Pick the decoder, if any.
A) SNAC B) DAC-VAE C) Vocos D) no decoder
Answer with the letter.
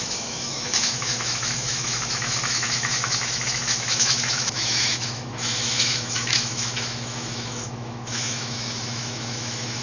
B